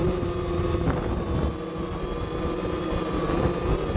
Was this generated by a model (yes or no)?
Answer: no